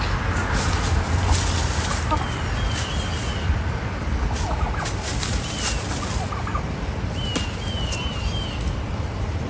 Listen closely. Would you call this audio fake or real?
real